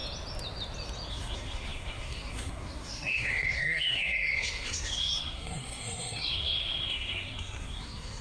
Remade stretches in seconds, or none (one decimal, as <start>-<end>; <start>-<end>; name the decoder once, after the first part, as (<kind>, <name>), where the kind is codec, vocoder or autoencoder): 1.1-8.2 (codec, SNAC)